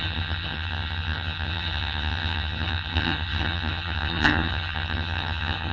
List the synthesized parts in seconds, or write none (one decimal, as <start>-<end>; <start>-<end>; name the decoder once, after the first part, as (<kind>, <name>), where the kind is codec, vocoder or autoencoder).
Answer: 0.0-5.7 (vocoder, HiFi-GAN)

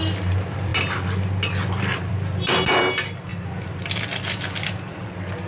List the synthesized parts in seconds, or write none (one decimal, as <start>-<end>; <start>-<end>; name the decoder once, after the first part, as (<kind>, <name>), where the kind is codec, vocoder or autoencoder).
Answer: none